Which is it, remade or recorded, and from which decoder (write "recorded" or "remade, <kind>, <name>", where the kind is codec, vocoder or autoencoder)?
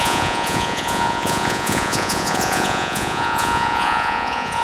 remade, vocoder, Vocos